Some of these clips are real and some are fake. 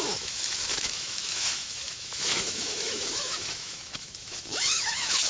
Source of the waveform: fake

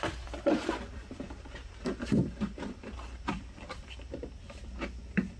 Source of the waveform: fake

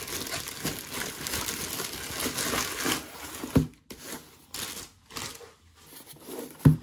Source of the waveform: real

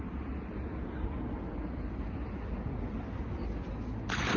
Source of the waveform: real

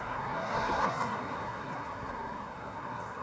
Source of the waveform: fake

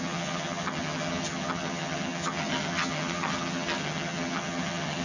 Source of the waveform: fake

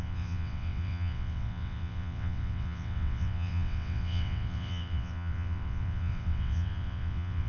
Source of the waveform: fake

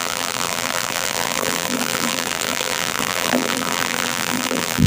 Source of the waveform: fake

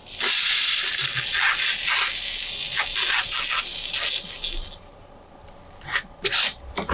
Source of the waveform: real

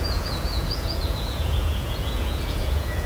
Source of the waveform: fake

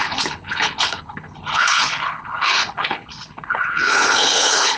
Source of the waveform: fake